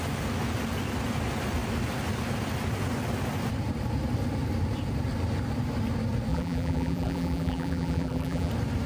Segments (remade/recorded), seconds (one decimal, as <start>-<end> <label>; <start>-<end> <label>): 0.0-6.3 recorded; 6.3-8.5 remade; 8.5-8.9 recorded